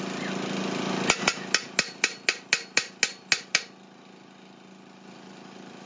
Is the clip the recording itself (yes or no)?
yes